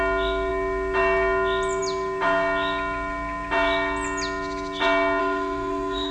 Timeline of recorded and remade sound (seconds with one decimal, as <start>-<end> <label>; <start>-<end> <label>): 0.0-5.2 recorded; 5.2-6.1 remade